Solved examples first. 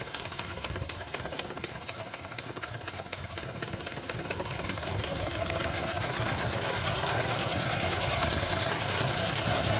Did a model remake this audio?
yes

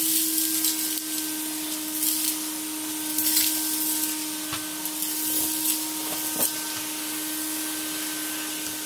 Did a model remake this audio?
no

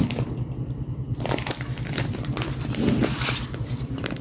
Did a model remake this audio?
yes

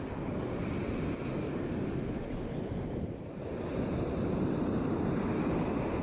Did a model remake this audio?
no